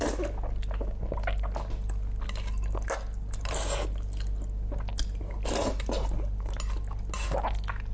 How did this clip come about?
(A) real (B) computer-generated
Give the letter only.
A